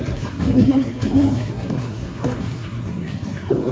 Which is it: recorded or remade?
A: remade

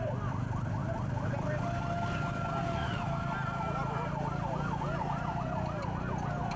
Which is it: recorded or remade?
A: recorded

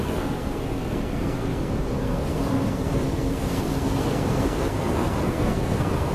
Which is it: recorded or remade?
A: remade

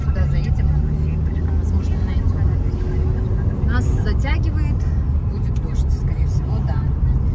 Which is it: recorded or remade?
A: recorded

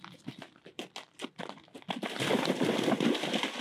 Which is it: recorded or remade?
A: recorded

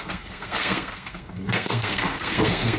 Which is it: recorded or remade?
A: remade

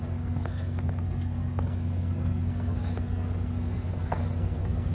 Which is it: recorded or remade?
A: remade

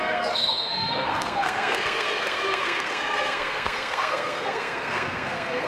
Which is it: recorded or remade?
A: remade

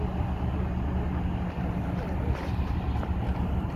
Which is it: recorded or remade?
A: recorded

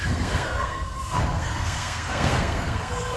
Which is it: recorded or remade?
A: remade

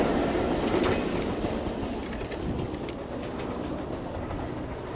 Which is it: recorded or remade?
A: recorded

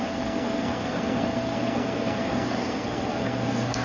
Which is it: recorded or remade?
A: remade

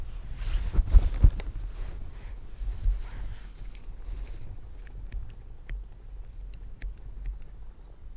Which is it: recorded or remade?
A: recorded